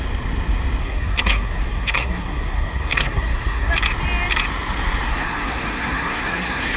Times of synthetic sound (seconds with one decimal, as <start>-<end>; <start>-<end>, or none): 0.8-3.7; 5.1-6.8